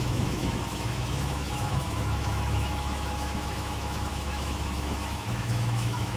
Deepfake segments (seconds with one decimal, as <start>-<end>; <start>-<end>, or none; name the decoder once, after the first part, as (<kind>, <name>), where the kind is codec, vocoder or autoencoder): 0.0-6.2 (autoencoder, DAC-VAE)